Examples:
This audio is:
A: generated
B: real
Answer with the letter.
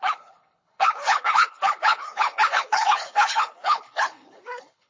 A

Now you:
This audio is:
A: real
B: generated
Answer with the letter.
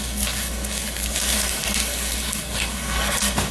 B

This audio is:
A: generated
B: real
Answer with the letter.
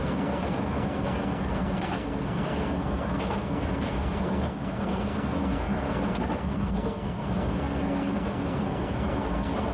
A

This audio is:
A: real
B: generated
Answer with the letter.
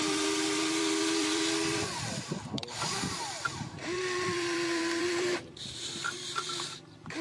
B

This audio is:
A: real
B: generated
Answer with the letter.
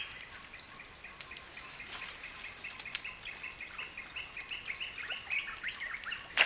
A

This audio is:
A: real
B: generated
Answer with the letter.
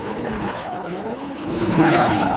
B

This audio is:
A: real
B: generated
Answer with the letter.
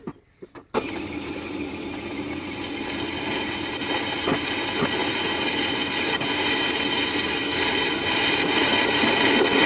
A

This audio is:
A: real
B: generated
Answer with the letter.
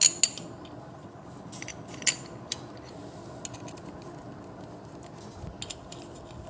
A